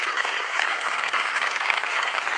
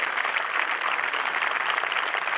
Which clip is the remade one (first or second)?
first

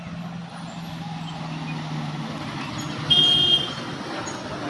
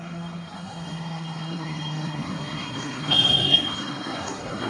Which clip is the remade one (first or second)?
second